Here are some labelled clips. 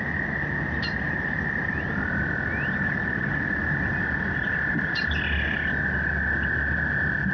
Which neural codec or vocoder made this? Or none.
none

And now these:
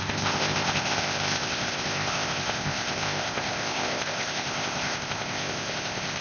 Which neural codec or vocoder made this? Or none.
codec, ZipCodec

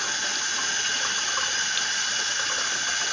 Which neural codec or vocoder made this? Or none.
none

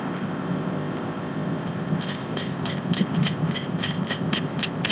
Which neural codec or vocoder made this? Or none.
codec, ZipCodec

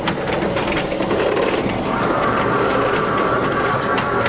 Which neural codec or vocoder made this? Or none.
none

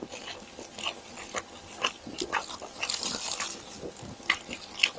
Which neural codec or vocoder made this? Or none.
none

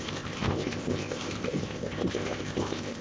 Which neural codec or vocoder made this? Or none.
codec, ZipCodec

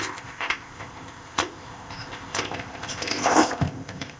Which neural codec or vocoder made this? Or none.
codec, ZipCodec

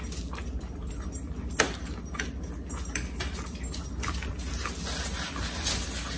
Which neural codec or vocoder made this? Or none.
none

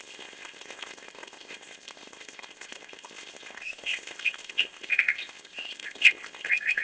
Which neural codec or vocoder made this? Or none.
codec, ZipCodec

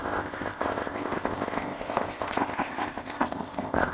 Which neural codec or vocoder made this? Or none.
codec, ZipCodec